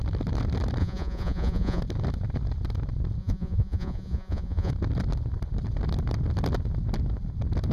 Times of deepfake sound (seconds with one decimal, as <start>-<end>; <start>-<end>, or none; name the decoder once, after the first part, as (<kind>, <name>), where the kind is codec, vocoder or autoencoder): 0.8-1.8 (vocoder, Vocos); 3.2-4.7